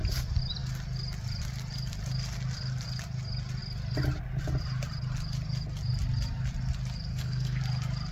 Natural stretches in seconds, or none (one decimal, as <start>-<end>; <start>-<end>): 0.0-7.1; 7.6-8.1